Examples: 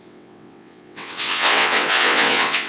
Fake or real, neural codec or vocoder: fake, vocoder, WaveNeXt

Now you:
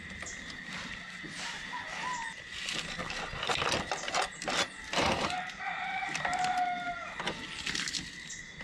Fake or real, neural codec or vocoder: real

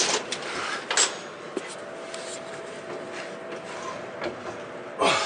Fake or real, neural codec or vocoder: real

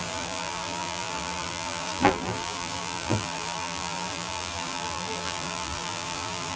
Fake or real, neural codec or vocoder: fake, vocoder, BigVGAN v2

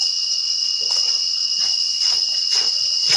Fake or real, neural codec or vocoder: fake, vocoder, WaveNeXt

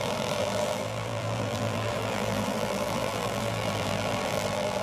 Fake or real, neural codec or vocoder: fake, vocoder, BigVGAN v2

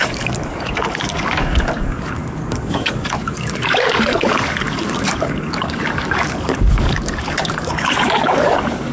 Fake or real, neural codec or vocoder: fake, codec, DAC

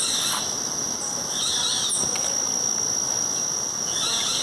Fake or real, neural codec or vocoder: real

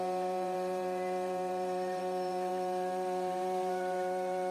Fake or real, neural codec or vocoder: fake, vocoder, BigVGAN v2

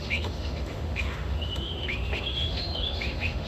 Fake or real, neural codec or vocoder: fake, autoencoder, DAC-VAE